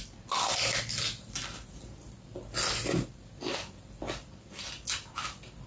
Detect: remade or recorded recorded